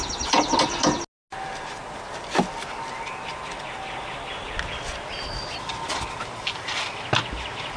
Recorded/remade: recorded